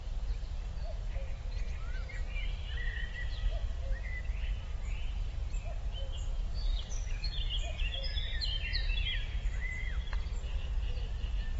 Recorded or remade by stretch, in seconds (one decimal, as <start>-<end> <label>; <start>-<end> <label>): 0.0-6.5 recorded; 6.5-7.3 remade; 7.3-11.6 recorded